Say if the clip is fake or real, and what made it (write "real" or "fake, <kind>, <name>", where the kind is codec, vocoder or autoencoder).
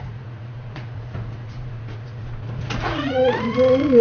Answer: fake, vocoder, Vocos